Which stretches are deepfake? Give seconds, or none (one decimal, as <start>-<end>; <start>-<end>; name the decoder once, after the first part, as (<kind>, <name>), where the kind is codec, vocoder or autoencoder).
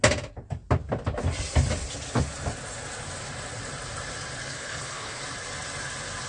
4.5-5.2 (codec, HILCodec)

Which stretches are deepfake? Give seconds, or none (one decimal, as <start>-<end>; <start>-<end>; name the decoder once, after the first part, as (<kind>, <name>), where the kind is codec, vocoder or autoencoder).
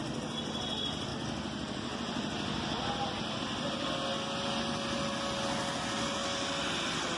none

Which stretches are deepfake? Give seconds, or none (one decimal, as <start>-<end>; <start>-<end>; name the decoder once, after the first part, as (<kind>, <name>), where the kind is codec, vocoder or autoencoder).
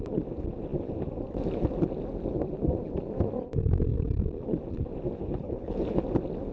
5.2-6.0 (codec, HILCodec)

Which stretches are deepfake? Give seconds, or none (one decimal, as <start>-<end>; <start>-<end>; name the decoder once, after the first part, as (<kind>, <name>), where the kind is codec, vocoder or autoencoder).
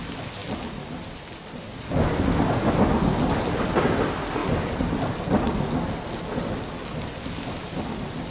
none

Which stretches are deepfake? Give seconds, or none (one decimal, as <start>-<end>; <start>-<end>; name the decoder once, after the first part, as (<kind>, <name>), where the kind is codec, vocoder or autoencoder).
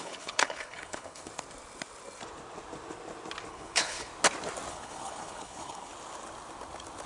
0.0-1.3 (codec, HILCodec); 3.5-4.1; 4.7-5.9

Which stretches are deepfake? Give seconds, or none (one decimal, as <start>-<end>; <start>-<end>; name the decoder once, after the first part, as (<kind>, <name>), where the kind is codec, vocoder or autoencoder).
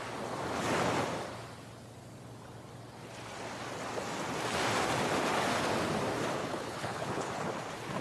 6.4-7.3 (codec, HILCodec)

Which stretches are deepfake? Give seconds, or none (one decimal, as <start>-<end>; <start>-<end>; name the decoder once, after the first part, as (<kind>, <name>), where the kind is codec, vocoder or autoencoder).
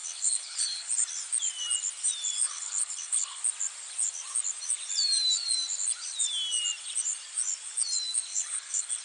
0.0-0.9 (codec, HILCodec); 2.4-3.4; 8.3-9.0